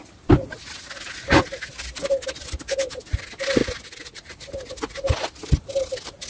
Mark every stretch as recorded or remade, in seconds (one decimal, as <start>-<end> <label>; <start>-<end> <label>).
0.0-6.3 recorded